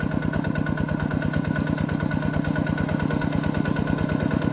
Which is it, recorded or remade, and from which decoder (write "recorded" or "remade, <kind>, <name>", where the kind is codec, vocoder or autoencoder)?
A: recorded